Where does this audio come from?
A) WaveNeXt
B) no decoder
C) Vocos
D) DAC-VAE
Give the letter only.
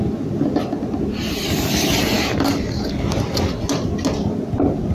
B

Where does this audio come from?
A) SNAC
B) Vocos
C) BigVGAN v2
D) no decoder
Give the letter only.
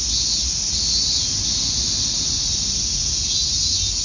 D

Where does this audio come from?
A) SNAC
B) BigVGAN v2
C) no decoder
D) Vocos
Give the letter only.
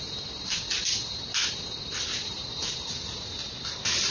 C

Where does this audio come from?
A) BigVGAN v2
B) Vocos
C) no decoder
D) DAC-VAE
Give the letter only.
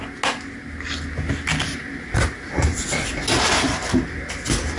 C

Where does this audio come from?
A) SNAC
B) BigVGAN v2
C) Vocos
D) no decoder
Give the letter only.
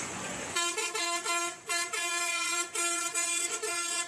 C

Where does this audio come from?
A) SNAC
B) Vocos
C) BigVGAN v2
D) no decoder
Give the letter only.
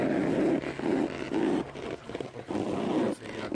D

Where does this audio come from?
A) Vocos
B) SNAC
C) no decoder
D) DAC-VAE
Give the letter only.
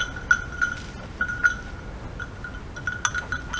C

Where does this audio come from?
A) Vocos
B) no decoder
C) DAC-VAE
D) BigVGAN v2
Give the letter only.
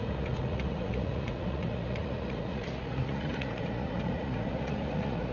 A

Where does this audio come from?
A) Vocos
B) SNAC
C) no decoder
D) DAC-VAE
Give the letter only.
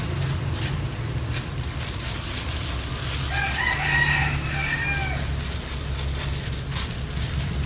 C